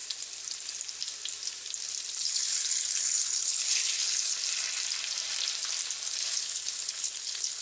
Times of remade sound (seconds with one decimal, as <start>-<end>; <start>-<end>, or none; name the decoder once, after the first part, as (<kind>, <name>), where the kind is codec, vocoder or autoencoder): 2.2-4.4 (codec, HILCodec); 6.2-7.6

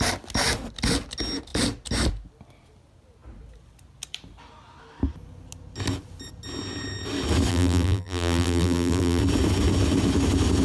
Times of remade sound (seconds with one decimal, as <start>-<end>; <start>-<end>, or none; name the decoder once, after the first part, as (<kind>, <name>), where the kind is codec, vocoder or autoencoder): 7.5-9.2 (vocoder, BigVGAN v2)

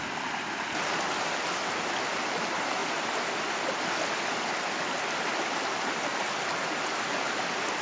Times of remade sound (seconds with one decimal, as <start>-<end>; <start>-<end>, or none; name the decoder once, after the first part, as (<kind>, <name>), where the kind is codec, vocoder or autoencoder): none

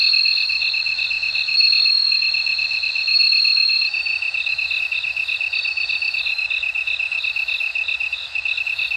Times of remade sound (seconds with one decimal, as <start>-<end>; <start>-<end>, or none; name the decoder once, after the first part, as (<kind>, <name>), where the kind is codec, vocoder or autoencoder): 0.0-9.0 (autoencoder, DAC-VAE)